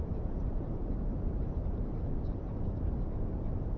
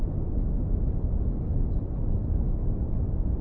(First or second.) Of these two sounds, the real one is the second